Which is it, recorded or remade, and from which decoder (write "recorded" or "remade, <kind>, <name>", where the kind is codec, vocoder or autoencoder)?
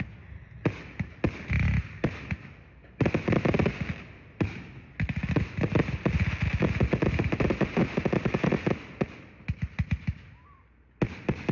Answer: recorded